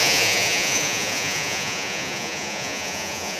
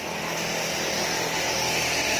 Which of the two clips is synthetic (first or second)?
first